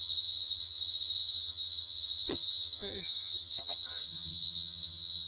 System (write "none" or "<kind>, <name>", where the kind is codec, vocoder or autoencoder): vocoder, HiFi-GAN